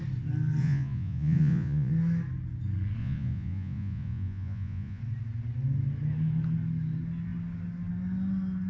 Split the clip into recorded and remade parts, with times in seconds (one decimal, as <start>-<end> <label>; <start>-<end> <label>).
0.0-0.6 recorded; 0.6-1.9 remade; 1.9-3.0 recorded; 3.0-5.0 remade; 5.0-8.7 recorded